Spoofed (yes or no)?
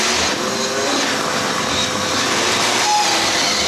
no